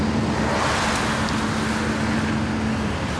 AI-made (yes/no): no